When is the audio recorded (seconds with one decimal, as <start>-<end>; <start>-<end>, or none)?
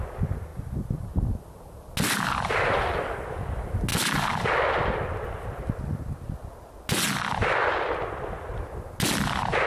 0.0-9.7